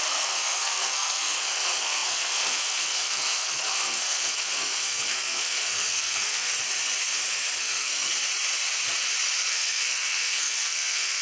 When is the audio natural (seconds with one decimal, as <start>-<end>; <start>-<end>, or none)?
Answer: 6.5-7.6; 8.1-9.5